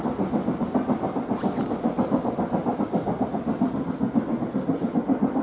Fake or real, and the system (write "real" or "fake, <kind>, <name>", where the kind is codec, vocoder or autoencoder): real